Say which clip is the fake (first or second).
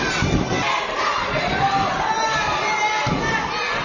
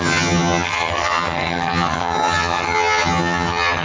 second